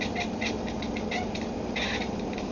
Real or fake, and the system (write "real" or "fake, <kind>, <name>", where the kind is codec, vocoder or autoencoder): fake, vocoder, BigVGAN v2